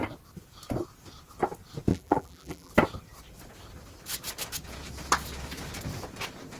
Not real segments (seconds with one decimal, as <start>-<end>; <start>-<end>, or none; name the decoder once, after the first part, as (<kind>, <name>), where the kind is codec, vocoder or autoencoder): 1.9-2.7 (vocoder, BigVGAN v2)